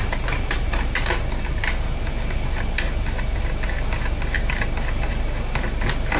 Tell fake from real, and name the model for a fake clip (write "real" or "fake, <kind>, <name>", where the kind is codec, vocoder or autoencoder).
real